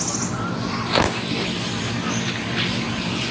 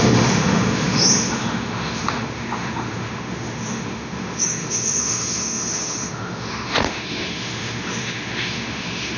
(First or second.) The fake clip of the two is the second